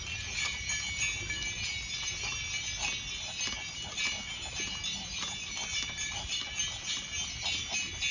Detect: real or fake real